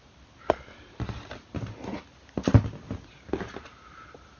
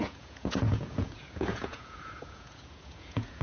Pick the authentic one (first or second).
first